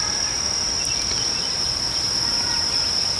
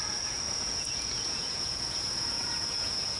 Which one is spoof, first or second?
second